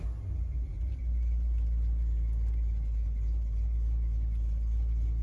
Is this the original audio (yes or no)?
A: yes